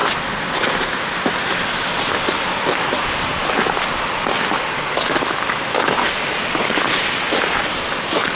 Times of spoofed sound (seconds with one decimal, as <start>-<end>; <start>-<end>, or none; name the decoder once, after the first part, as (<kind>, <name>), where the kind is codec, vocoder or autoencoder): none